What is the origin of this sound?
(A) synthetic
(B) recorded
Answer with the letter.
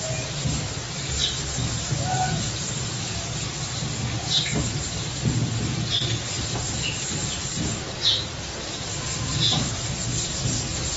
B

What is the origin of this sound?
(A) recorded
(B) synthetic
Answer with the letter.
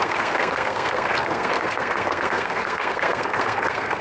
B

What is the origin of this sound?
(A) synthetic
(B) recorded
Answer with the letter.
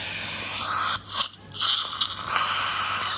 B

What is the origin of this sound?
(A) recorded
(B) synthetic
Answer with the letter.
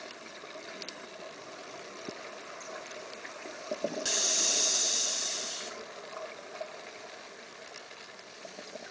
A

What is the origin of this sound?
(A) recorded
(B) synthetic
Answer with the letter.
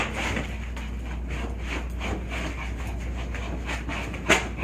A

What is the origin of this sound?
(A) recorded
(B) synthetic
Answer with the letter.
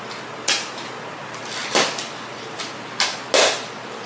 A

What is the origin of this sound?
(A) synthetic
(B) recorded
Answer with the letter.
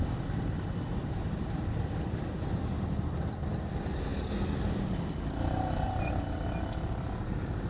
B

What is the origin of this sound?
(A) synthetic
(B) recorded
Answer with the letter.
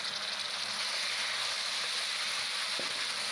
B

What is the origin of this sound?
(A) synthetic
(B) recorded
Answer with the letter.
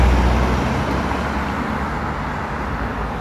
B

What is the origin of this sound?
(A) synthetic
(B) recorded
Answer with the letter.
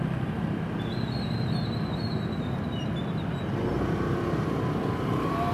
B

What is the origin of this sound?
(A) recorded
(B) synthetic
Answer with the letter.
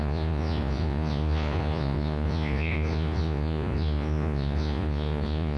B